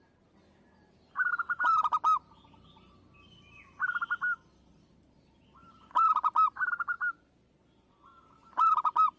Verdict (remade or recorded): recorded